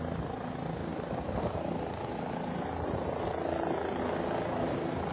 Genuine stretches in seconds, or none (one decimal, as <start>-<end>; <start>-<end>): 0.0-5.1